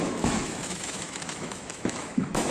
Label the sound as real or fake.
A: fake